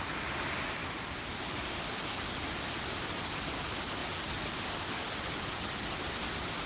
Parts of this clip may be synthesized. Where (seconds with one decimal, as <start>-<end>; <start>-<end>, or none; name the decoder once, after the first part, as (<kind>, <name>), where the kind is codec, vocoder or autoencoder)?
0.8-2.7 (vocoder, BigVGAN v2); 4.0-4.7